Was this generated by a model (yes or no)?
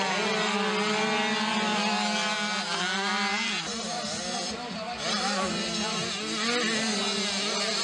no